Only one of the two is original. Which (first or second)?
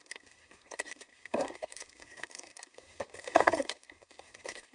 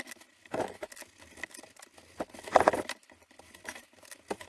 second